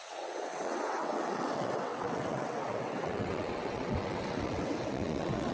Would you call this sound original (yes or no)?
no